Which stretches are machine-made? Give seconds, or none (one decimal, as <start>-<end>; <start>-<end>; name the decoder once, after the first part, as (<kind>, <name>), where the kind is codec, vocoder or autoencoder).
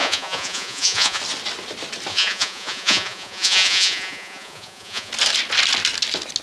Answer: 0.0-1.2 (vocoder, Vocos); 2.1-5.1